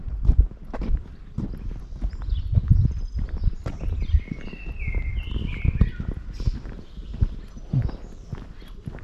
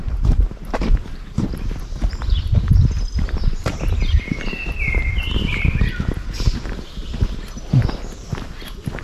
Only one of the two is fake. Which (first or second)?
second